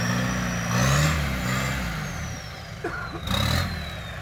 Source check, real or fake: real